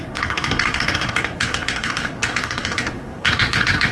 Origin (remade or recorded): remade